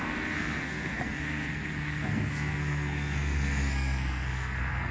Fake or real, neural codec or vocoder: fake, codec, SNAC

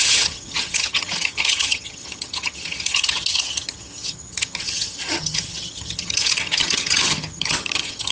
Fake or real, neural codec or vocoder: fake, vocoder, HiFi-GAN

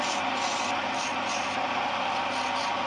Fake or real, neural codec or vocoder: real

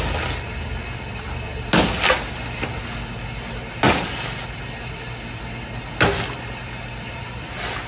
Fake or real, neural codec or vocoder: real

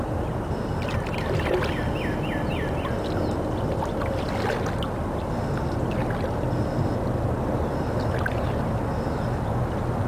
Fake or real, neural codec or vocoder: real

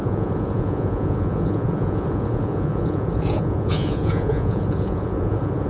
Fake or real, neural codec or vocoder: fake, vocoder, Vocos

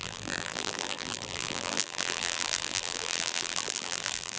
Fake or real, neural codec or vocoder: fake, vocoder, BigVGAN v2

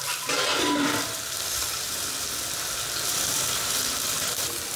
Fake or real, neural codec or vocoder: fake, vocoder, BigVGAN v2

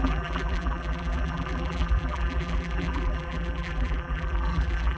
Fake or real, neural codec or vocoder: fake, vocoder, BigVGAN v2